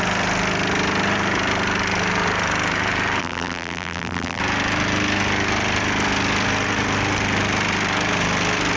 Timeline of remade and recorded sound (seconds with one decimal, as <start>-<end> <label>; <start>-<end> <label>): 0.0-3.2 recorded; 3.2-4.4 remade; 4.4-8.8 recorded